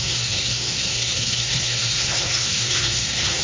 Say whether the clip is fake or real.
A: fake